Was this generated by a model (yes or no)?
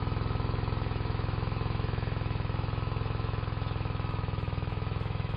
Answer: yes